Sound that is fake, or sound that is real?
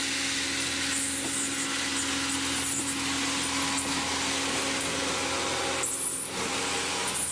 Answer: real